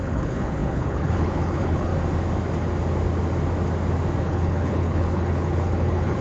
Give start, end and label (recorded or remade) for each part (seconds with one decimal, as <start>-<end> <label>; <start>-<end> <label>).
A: 0.0-1.9 remade; 1.9-4.2 recorded; 4.2-6.2 remade